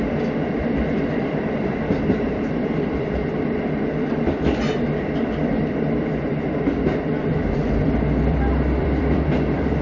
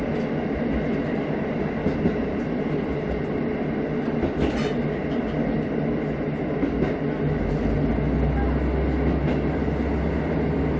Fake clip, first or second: first